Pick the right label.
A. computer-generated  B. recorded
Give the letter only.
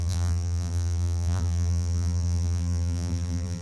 A